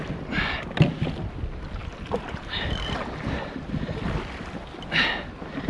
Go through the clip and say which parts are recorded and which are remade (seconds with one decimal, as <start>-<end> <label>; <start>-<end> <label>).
0.0-5.7 recorded